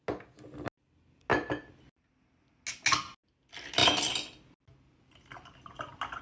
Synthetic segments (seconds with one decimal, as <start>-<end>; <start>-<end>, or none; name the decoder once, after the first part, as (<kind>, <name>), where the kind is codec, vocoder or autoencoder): none